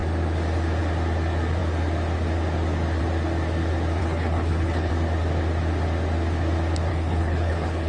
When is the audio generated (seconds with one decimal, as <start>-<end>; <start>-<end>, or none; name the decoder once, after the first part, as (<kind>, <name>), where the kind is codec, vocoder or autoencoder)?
4.0-4.9 (codec, HILCodec); 6.9-7.9